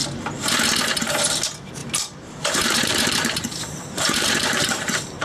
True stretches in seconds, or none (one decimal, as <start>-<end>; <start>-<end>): 0.0-1.8